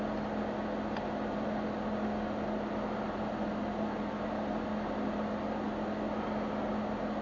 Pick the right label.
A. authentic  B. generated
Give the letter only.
A